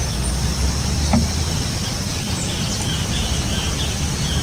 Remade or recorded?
recorded